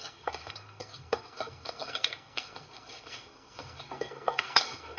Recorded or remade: remade